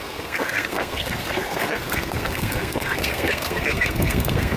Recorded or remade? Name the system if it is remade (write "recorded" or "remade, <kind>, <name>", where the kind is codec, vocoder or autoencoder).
remade, codec, SNAC